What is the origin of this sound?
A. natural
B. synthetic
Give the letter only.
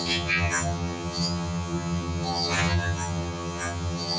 B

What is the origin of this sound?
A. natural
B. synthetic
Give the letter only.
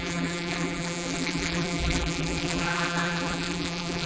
B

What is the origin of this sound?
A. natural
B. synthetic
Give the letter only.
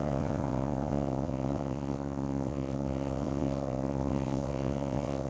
B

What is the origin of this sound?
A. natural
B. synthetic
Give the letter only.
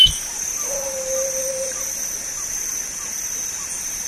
B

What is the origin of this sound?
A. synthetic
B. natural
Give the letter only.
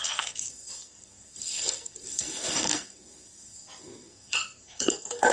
A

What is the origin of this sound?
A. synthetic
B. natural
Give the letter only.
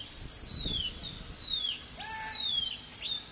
B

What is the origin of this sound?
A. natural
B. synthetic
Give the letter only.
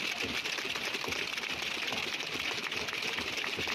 A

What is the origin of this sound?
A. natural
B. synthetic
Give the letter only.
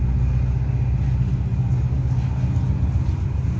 A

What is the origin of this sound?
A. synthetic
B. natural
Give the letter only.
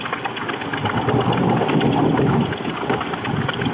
B